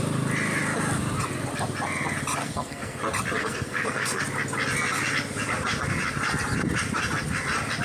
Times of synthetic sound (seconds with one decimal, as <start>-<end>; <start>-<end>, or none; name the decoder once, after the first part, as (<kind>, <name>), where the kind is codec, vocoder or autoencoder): 2.4-3.0 (codec, SNAC); 3.4-4.2